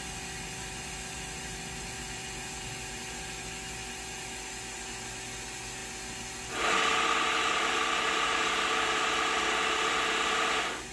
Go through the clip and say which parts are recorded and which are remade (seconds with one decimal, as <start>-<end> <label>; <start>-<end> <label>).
0.0-10.9 recorded